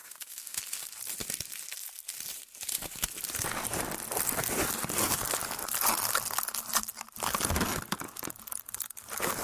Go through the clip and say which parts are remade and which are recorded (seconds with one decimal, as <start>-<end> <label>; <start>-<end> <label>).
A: 0.0-0.6 remade; 0.6-9.4 recorded